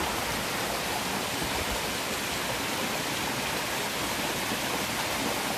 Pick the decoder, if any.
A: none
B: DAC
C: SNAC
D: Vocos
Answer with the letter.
A